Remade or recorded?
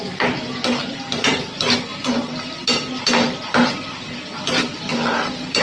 recorded